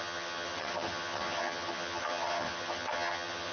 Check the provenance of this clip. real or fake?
fake